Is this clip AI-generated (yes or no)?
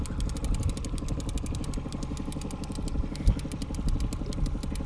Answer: no